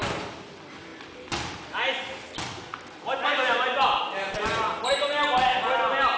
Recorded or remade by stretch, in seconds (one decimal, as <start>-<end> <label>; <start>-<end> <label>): 0.0-6.2 recorded